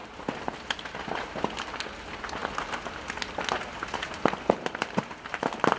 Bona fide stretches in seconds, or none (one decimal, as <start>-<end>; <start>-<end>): 0.0-5.8